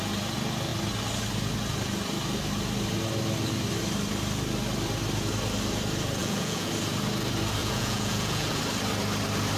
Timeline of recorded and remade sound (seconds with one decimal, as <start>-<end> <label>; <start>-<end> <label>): 0.0-6.2 recorded; 6.2-6.7 remade; 6.7-7.6 recorded; 7.6-8.6 remade; 8.6-9.6 recorded